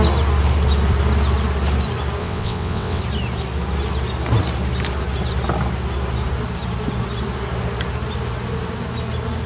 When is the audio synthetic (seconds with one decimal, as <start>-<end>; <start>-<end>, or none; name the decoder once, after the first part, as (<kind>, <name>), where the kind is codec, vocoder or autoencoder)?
2.2-3.0 (vocoder, WaveNeXt)